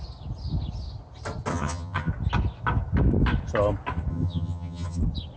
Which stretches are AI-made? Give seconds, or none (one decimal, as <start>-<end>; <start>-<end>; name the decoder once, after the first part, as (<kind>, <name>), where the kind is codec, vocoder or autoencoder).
1.5-2.1 (vocoder, HiFi-GAN); 4.1-5.0